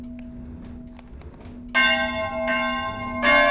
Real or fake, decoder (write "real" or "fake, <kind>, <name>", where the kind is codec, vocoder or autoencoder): real